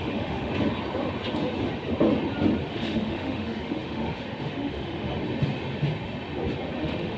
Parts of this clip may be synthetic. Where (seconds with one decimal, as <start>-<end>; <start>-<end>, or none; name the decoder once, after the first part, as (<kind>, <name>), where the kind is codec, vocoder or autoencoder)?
0.0-0.5 (autoencoder, DAC-VAE); 2.7-5.1; 6.8-7.2